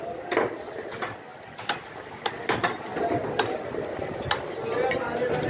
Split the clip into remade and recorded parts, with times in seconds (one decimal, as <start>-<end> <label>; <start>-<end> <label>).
0.0-5.5 recorded